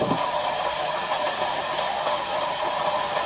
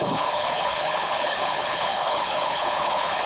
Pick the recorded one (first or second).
first